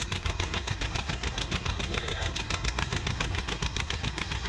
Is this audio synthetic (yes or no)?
yes